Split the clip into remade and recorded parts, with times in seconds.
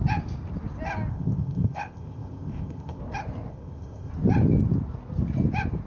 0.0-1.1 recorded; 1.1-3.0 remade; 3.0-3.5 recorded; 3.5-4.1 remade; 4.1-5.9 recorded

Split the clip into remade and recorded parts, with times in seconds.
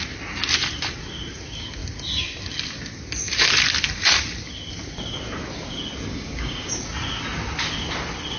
0.0-6.1 recorded; 6.1-6.7 remade; 6.7-8.4 recorded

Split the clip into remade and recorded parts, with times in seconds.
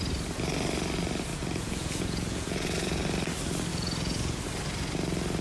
0.0-1.3 recorded; 1.3-3.0 remade; 3.0-3.7 recorded; 3.7-4.4 remade; 4.4-5.4 recorded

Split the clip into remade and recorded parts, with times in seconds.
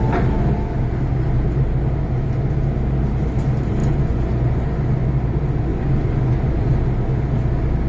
0.0-3.8 recorded; 3.8-5.1 remade; 5.1-5.7 recorded; 5.7-6.7 remade; 6.7-7.9 recorded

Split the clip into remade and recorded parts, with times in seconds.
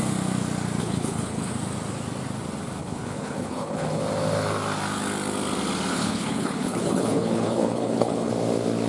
0.0-0.8 recorded; 0.8-1.5 remade; 1.5-2.8 recorded; 2.8-4.0 remade; 4.0-5.9 recorded; 5.9-8.3 remade; 8.3-8.9 recorded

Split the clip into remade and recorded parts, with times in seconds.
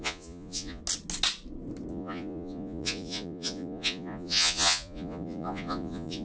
0.0-0.8 remade; 0.8-1.9 recorded; 1.9-6.2 remade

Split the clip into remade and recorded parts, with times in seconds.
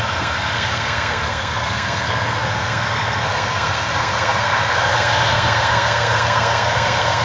0.0-7.2 remade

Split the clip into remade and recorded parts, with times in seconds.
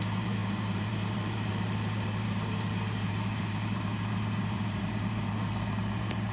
0.0-6.3 remade